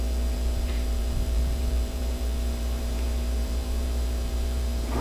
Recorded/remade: remade